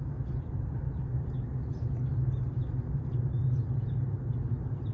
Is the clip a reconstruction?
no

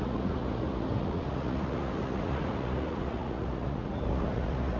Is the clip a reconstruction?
yes